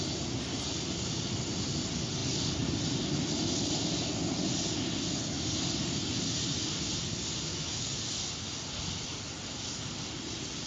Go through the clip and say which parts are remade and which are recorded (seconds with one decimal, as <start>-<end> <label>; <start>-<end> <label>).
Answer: 0.0-7.5 recorded; 7.5-8.0 remade; 8.0-10.7 recorded